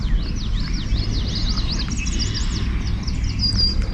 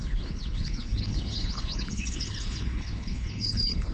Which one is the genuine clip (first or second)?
first